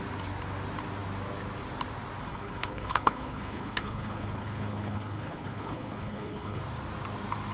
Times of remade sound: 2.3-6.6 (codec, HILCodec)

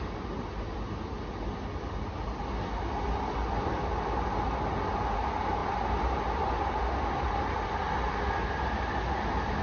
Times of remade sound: none

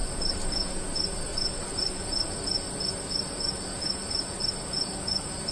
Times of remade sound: 0.0-5.5 (vocoder, Vocos)

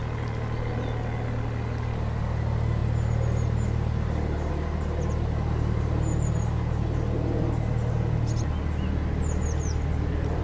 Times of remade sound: none